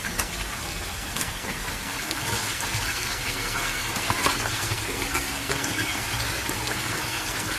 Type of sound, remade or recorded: remade